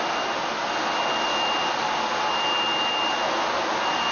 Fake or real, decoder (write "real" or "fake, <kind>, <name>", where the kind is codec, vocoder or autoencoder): real